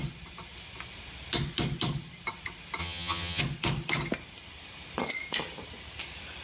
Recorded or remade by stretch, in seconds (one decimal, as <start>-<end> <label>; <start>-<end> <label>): 0.0-2.8 recorded; 2.8-3.4 remade; 3.4-6.4 recorded